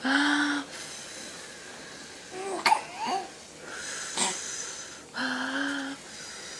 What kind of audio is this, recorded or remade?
recorded